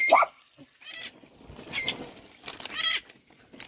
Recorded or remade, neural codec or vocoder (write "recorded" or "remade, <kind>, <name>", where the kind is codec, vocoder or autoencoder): recorded